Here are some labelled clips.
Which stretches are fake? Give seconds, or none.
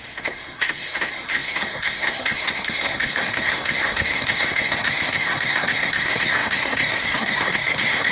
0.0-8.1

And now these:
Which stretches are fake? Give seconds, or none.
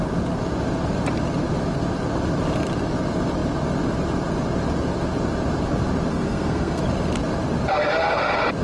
6.1-6.8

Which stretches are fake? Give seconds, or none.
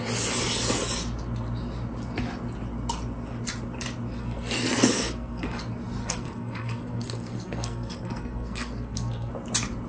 4.2-5.6; 6.0-9.3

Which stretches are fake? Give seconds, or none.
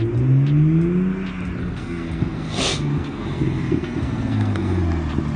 1.6-4.8